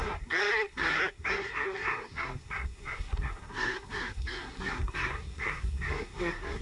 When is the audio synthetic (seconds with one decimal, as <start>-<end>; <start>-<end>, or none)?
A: 0.0-6.6